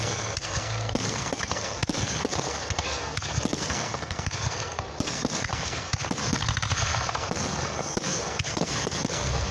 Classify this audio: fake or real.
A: fake